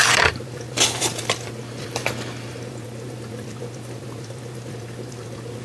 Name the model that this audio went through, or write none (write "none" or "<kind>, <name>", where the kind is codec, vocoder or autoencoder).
vocoder, BigVGAN v2